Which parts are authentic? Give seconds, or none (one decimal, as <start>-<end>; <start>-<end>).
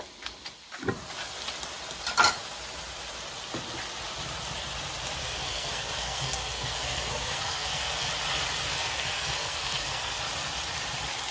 0.0-5.2; 8.1-8.7; 10.2-11.3